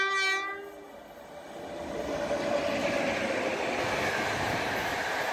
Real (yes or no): yes